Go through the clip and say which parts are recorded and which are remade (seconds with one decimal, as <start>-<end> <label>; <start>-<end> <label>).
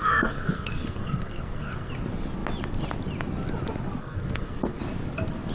0.0-1.9 remade; 1.9-4.0 recorded; 4.0-4.8 remade; 4.8-5.5 recorded